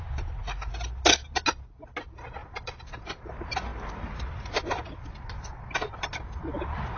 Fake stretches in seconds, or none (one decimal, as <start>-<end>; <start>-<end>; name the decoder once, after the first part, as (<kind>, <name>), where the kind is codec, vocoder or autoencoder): 2.4-3.3 (vocoder, BigVGAN v2); 3.7-4.6